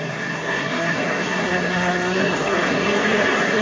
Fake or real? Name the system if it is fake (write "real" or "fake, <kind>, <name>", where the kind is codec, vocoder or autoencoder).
fake, codec, SNAC